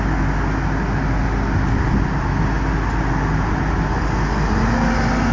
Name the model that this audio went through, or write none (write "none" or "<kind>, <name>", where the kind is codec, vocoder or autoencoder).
none